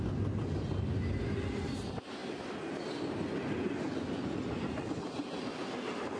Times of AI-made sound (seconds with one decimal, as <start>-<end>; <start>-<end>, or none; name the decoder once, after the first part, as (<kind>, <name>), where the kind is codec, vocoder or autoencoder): none